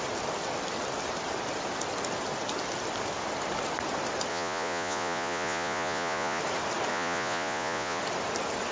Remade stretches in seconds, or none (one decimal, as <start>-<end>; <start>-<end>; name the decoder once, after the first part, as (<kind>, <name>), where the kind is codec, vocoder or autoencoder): 4.3-6.4 (vocoder, Vocos); 6.9-8.0